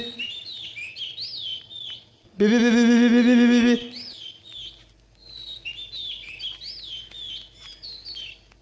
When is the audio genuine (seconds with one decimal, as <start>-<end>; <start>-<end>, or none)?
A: 0.0-8.6